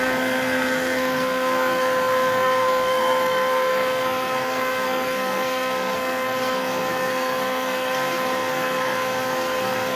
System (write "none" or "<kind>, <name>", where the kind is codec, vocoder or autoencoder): codec, SNAC